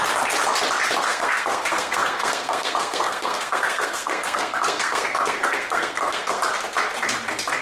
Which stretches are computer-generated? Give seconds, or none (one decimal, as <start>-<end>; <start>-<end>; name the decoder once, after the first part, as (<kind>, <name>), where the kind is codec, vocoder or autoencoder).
1.0-6.4 (codec, SNAC)